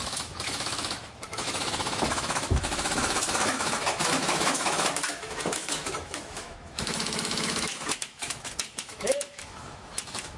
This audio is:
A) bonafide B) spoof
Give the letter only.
B